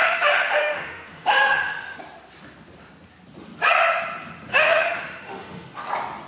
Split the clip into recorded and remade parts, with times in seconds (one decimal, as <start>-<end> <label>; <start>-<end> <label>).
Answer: 0.0-2.0 remade; 2.0-4.5 recorded; 4.5-5.8 remade; 5.8-6.3 recorded